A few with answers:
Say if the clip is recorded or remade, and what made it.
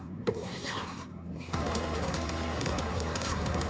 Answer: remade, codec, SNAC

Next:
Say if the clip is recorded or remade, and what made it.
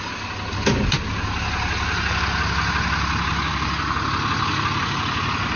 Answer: recorded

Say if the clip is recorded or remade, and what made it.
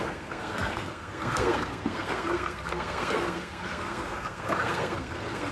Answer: remade, codec, SNAC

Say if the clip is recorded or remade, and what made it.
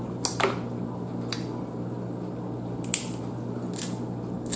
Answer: recorded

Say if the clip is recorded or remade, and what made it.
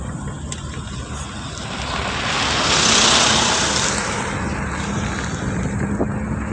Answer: recorded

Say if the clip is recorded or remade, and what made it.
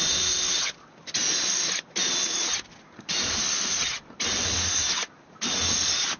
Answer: recorded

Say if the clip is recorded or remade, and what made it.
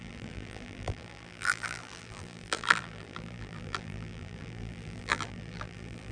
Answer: remade, vocoder, BigVGAN v2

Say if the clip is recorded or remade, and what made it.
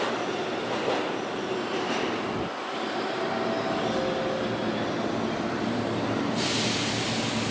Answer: recorded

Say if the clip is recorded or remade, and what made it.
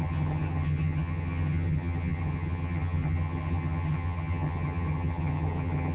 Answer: remade, vocoder, HiFi-GAN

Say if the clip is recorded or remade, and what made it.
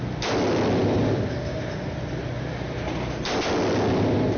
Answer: recorded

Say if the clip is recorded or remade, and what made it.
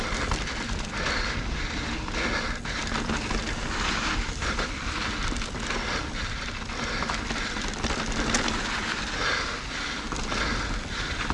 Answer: recorded